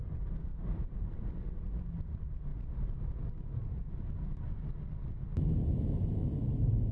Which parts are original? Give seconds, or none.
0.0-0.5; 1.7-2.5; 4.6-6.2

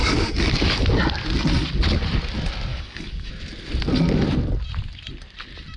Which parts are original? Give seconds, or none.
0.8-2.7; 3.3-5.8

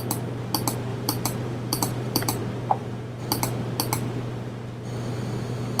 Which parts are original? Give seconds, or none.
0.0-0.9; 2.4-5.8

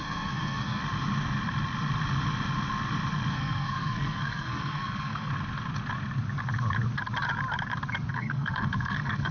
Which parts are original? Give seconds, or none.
0.8-3.3; 5.3-8.1

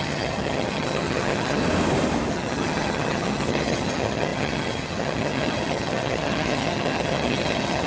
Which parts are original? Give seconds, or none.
1.6-2.3